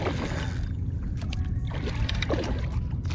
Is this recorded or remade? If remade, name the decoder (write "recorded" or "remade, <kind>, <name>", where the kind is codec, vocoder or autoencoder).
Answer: recorded